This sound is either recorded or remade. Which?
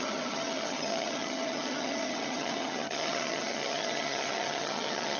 remade